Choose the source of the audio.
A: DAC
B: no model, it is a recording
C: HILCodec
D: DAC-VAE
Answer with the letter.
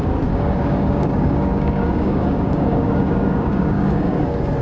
A